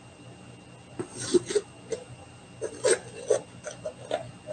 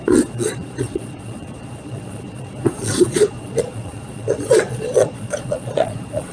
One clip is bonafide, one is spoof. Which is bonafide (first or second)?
first